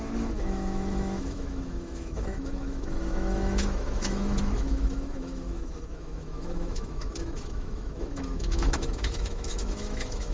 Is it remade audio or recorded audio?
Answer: remade